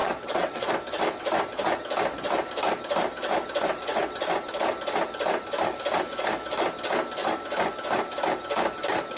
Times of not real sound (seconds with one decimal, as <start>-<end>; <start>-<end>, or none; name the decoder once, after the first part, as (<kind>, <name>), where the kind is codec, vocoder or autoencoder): 0.0-0.7 (vocoder, WaveNeXt)